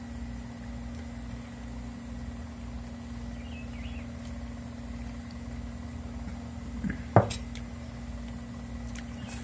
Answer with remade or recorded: recorded